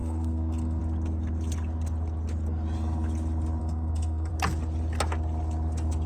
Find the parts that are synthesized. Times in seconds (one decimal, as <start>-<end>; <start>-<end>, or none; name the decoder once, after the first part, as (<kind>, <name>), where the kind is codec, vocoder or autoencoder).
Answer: 0.0-0.8 (codec, SNAC); 3.6-4.3

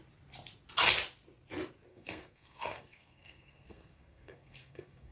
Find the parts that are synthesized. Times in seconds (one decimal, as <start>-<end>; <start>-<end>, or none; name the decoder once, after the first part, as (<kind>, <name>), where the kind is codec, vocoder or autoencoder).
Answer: 1.9-5.1 (codec, SNAC)

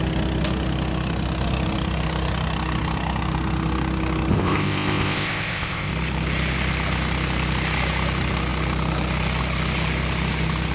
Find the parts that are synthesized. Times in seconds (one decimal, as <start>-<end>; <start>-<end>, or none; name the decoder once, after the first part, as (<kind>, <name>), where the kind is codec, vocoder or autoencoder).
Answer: 4.3-5.9 (codec, ZipCodec)

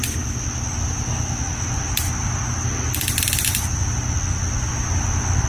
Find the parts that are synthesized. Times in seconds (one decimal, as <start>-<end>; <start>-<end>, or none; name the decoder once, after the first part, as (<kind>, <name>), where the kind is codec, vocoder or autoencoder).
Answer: none

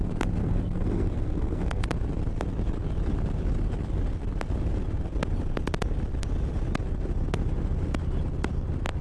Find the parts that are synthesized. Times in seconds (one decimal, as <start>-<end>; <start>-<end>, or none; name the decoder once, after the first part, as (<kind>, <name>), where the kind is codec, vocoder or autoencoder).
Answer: 0.4-1.8 (codec, SNAC)

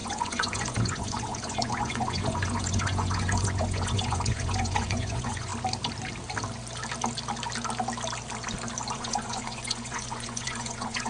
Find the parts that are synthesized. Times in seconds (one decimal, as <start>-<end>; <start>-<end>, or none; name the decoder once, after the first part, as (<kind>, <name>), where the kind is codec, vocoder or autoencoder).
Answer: 0.0-5.5 (vocoder, Vocos); 8.9-11.1

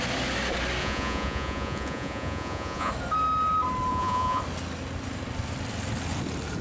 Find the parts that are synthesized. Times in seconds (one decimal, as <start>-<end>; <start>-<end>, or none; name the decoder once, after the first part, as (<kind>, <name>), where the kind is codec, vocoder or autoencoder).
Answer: 0.8-2.9 (vocoder, Vocos); 3.9-4.4

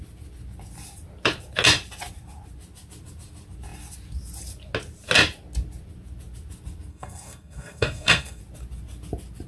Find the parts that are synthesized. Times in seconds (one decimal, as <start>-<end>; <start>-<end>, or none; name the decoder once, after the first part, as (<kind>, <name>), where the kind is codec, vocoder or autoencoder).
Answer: 6.9-8.4 (codec, SNAC)